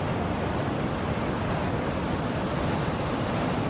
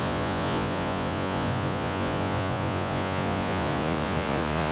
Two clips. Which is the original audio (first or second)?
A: first